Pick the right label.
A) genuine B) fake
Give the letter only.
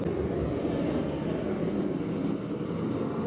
A